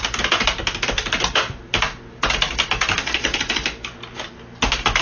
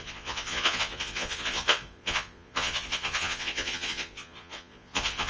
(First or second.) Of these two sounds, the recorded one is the first